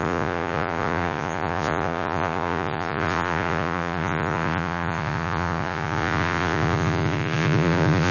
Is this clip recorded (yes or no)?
no